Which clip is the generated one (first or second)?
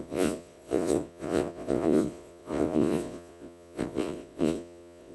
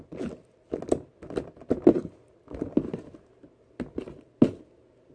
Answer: first